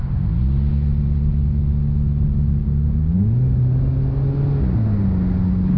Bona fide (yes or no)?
yes